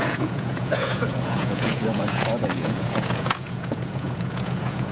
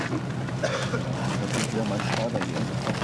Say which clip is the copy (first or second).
first